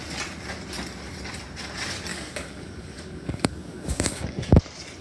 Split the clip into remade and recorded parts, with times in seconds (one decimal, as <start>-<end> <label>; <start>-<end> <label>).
0.0-2.1 recorded; 2.1-4.6 remade; 4.6-5.0 recorded